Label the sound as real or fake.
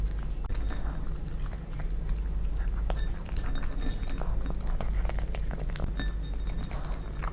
real